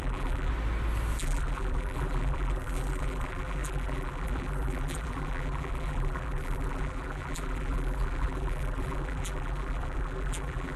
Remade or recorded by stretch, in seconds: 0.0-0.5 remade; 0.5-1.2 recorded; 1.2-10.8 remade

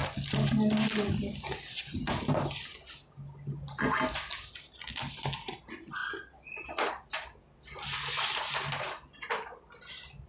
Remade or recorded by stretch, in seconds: 0.0-0.5 remade; 0.5-10.3 recorded

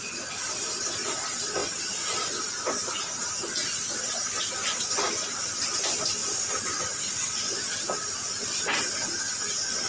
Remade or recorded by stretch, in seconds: 0.0-3.6 recorded; 3.6-5.1 remade; 5.1-6.2 recorded; 6.2-8.9 remade; 8.9-9.9 recorded

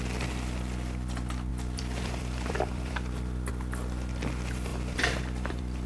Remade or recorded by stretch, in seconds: 0.0-1.5 recorded; 1.5-3.5 remade; 3.5-4.7 recorded; 4.7-5.9 remade